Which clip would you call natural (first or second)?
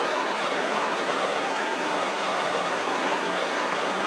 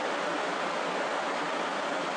second